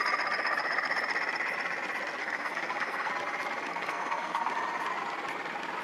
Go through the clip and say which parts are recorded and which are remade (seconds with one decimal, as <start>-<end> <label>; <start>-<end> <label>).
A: 0.0-2.2 recorded; 2.2-3.1 remade; 3.1-3.7 recorded; 3.7-4.5 remade; 4.5-5.8 recorded